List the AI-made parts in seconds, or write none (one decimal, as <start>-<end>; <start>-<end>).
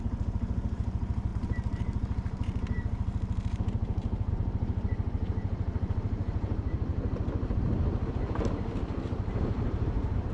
0.0-6.9; 8.1-10.3